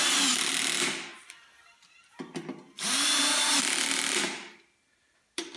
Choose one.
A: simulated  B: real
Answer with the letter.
A